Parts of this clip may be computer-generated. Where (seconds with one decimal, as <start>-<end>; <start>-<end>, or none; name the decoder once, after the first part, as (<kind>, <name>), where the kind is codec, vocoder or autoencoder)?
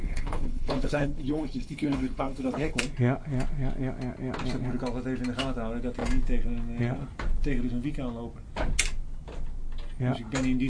0.0-2.8 (codec, HILCodec)